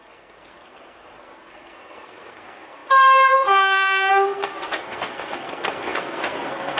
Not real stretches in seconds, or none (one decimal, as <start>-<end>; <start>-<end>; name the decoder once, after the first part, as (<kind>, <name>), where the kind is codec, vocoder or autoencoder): 0.0-6.8 (codec, SNAC)